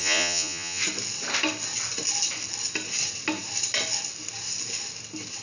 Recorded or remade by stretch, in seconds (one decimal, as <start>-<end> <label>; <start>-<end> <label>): 0.0-0.8 remade; 0.8-5.4 recorded